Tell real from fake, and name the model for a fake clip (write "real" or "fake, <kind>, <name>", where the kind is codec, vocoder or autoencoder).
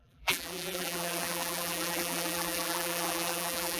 fake, vocoder, BigVGAN v2